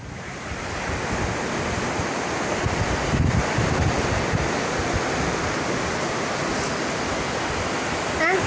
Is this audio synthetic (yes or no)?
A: no